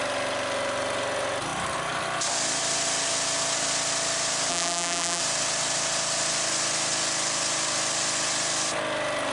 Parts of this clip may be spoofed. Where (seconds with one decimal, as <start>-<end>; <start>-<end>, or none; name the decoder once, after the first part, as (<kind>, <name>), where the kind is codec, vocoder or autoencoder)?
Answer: 4.5-5.2 (vocoder, BigVGAN v2)